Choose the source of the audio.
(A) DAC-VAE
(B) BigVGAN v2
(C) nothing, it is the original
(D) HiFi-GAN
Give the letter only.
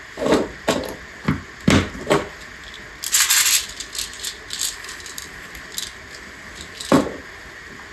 C